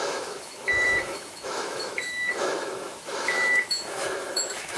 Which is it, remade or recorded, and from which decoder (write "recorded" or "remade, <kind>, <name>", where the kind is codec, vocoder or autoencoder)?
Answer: remade, autoencoder, DAC-VAE